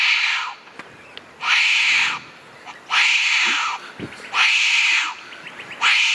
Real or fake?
real